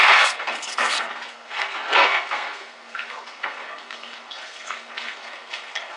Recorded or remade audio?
remade